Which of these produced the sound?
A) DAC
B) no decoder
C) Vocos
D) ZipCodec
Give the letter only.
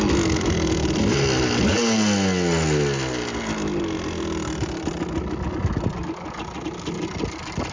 B